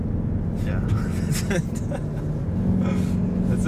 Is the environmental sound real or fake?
real